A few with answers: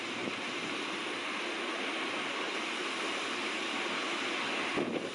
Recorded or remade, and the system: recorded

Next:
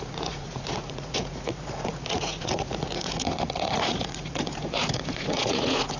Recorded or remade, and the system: remade, vocoder, Vocos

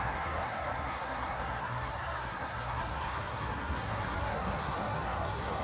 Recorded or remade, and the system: remade, codec, SNAC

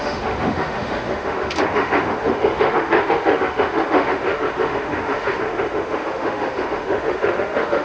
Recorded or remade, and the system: remade, autoencoder, DAC-VAE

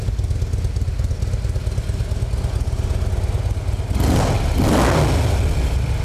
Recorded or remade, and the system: recorded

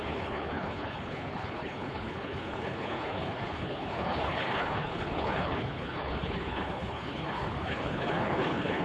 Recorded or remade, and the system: remade, codec, HILCodec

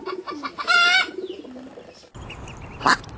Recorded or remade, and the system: recorded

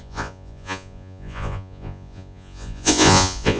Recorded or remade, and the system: remade, vocoder, Vocos